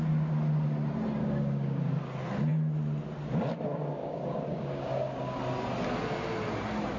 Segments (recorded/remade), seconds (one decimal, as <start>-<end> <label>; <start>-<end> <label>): 0.0-1.2 recorded; 1.2-1.8 remade; 1.8-4.0 recorded; 4.0-5.4 remade; 5.4-7.0 recorded